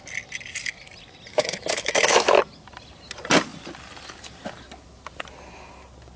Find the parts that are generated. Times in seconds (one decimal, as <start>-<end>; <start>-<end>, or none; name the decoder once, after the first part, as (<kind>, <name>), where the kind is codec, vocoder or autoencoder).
1.3-2.4 (autoencoder, DAC-VAE)